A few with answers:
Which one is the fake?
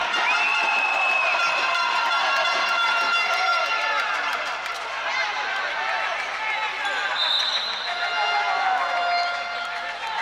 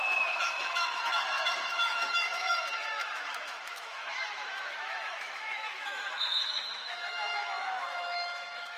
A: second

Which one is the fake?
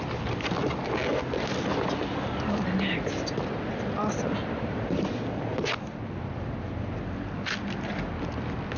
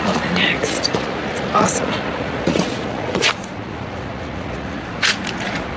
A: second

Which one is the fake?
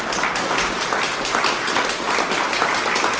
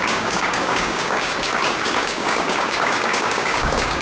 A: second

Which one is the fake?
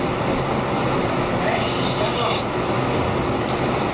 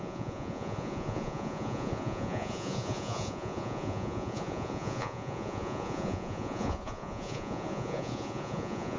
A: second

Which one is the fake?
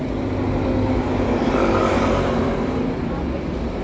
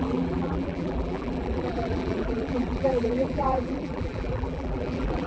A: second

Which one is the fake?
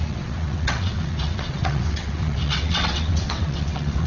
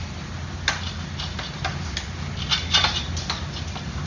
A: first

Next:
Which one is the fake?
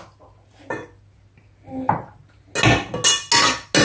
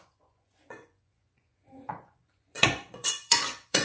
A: second